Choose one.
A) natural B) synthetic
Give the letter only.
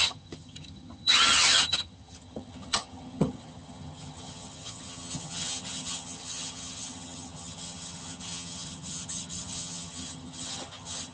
B